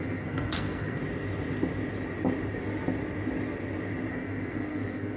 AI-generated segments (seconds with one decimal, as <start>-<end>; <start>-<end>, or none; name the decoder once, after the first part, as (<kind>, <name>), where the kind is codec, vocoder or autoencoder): 0.0-1.0 (codec, SNAC); 4.1-5.2